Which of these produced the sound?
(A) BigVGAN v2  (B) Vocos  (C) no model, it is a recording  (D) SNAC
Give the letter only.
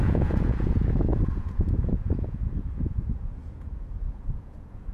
B